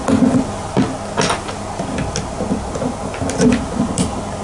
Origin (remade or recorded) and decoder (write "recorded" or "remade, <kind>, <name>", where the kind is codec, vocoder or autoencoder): recorded